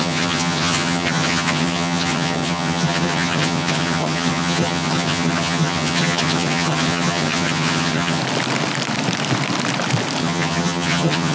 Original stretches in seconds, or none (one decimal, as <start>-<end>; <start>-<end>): 8.2-10.2